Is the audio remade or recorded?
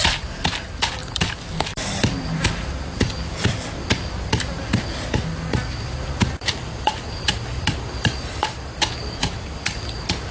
remade